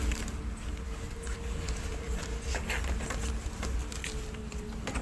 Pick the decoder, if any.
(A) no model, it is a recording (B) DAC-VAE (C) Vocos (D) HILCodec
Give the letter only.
A